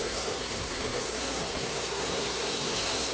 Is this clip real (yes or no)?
no